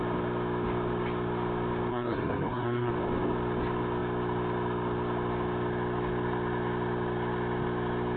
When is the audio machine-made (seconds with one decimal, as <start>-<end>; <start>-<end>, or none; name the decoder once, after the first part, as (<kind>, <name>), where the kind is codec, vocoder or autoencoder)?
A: 1.9-2.9 (codec, SNAC)